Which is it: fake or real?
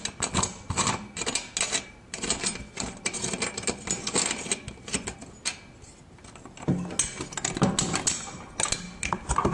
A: real